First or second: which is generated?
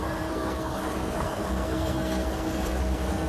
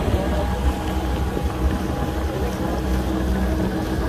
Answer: first